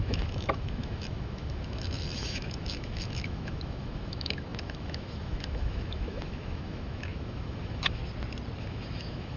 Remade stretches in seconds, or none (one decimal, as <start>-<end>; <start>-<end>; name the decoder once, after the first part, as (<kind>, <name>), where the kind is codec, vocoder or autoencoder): 0.0-8.0 (autoencoder, DAC-VAE); 8.6-9.4